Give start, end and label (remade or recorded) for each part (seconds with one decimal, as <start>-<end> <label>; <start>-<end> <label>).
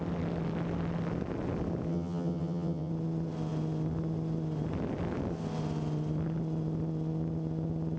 0.0-1.9 recorded; 1.9-2.9 remade; 2.9-8.0 recorded